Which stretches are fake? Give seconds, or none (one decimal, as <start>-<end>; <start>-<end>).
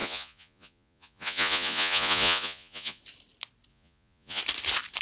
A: 0.0-3.0; 3.7-4.4